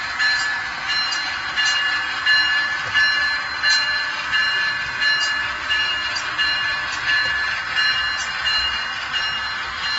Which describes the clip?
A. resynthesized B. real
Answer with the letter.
B